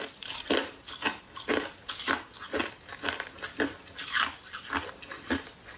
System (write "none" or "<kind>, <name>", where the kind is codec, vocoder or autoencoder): none